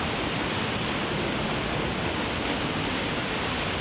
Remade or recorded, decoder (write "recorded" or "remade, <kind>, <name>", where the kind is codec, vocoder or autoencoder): recorded